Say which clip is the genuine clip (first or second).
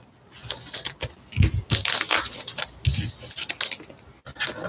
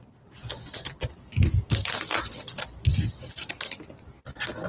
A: first